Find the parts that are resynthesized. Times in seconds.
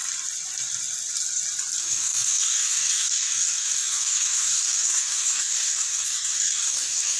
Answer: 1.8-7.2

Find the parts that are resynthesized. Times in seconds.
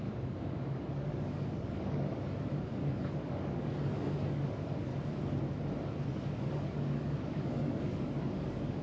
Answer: 0.0-4.9; 6.1-8.8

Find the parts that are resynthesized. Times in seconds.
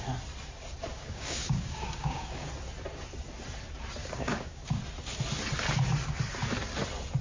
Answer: 0.9-2.5; 4.0-4.8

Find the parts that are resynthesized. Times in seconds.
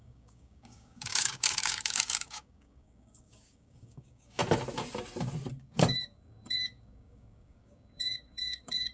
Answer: 0.0-4.4; 5.6-8.9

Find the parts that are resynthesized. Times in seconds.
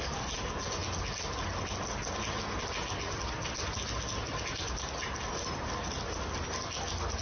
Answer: none